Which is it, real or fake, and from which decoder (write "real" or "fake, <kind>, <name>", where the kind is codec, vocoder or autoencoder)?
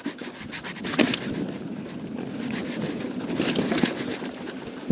real